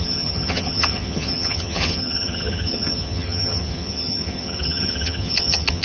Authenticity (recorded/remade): remade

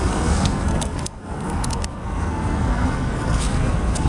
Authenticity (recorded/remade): remade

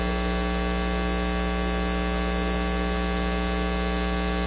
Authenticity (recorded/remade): recorded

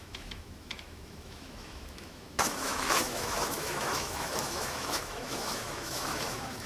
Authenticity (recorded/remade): remade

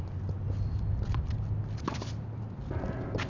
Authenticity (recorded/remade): recorded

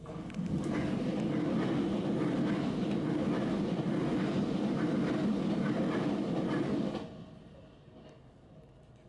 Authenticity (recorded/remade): recorded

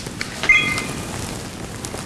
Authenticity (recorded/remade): recorded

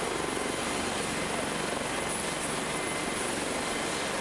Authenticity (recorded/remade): recorded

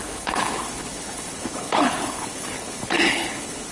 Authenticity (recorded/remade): remade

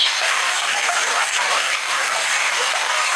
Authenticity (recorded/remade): remade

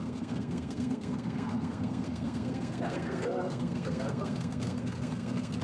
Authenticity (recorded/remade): remade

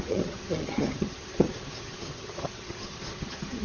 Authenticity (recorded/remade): remade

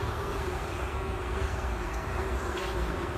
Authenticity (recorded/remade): remade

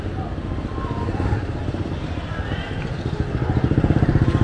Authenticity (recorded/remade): recorded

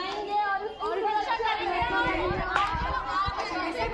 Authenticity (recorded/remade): recorded